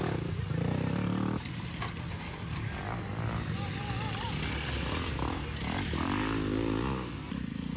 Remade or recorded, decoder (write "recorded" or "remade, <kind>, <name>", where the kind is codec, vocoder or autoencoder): recorded